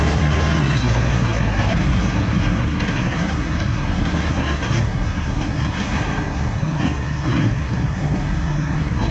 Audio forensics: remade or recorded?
remade